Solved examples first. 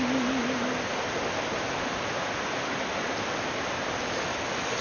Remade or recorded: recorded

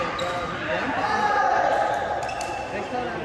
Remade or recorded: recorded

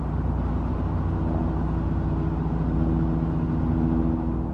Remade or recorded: recorded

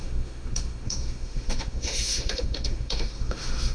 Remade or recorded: remade